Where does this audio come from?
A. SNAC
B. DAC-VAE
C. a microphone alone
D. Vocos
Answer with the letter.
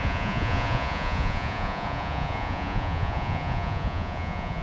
D